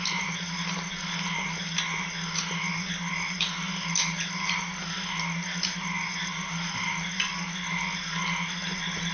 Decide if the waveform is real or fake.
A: real